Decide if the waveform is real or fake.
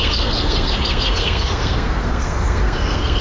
fake